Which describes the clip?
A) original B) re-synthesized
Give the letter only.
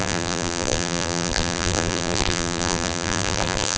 B